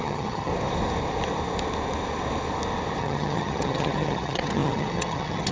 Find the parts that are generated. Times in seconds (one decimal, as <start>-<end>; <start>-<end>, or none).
0.0-0.5; 3.0-5.5